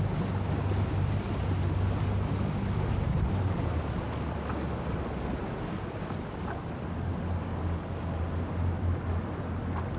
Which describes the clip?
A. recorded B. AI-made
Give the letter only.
A